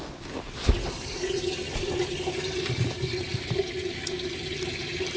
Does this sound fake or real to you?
real